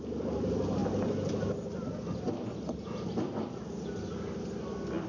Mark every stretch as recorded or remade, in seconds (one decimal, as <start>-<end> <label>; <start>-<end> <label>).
0.0-5.1 recorded